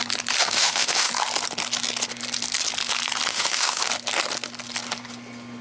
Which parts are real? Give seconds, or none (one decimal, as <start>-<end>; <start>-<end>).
0.0-0.4; 1.1-3.3; 3.9-5.6